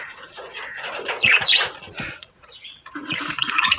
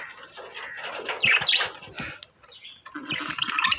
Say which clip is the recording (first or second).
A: second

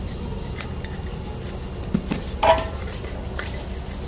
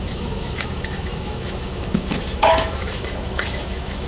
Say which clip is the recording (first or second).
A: first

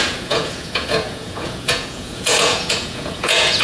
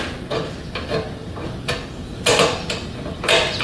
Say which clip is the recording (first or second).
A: second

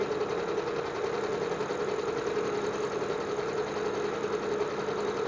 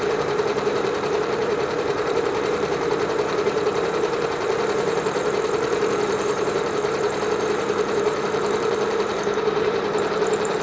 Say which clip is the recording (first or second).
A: first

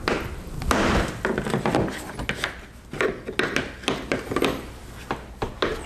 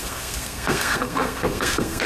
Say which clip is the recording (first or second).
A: first